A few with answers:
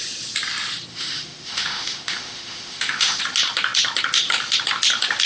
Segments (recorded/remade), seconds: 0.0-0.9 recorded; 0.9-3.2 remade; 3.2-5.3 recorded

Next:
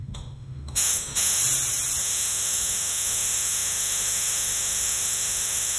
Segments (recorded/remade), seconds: 0.0-1.4 remade; 1.4-2.0 recorded; 2.0-5.8 remade

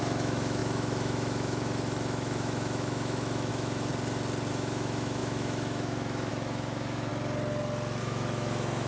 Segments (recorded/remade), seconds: 0.0-3.9 remade; 3.9-4.5 recorded; 4.5-7.1 remade; 7.1-8.0 recorded; 8.0-8.9 remade

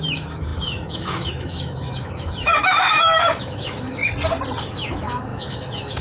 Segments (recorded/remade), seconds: 0.0-4.0 remade; 4.0-4.6 recorded; 4.6-6.0 remade

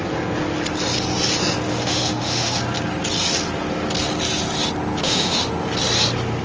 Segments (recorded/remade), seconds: 0.0-1.7 recorded; 1.7-2.6 remade; 2.6-5.0 recorded; 5.0-5.5 remade; 5.5-6.4 recorded